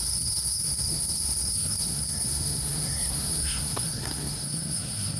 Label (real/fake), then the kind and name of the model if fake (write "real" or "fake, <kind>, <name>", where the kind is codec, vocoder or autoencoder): fake, codec, SNAC